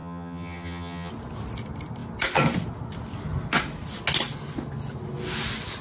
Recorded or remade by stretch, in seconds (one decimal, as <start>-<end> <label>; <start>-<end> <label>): 0.0-1.1 remade; 1.1-5.8 recorded